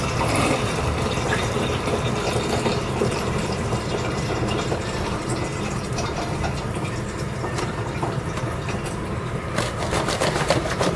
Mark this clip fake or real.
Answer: fake